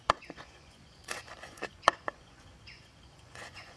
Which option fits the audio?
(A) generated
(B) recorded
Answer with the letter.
A